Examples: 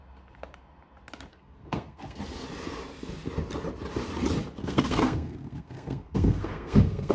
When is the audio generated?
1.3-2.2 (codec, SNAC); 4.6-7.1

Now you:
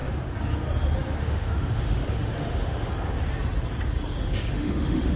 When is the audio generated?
1.2-2.9 (autoencoder, DAC-VAE); 4.5-5.2